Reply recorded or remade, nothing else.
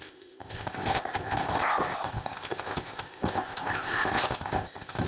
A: remade